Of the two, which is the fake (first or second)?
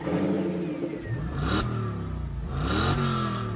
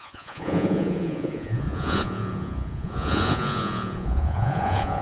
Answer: second